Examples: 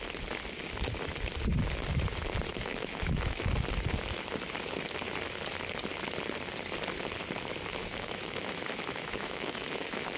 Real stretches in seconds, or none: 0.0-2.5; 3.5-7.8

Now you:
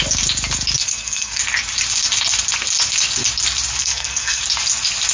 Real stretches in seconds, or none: 0.0-0.8; 1.4-3.8; 4.4-5.1